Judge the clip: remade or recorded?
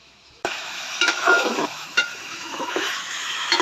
remade